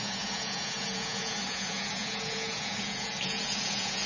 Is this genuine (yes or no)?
no